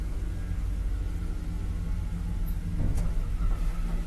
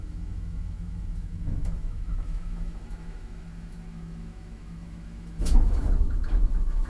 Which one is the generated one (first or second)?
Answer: second